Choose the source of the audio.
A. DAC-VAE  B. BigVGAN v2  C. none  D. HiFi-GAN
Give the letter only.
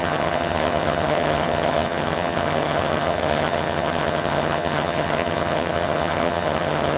D